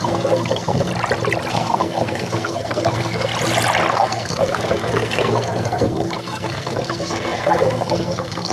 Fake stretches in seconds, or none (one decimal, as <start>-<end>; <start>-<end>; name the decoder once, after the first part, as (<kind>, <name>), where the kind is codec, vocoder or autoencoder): 0.0-0.9 (codec, SNAC); 1.5-3.3; 3.9-8.5